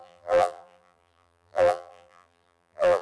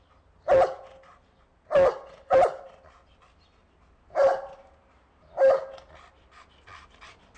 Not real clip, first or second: first